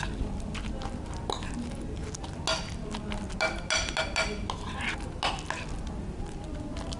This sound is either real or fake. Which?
real